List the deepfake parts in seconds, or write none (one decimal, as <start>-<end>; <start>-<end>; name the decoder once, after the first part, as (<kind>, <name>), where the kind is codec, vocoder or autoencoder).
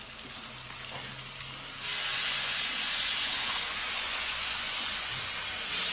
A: 2.1-5.9 (vocoder, Vocos)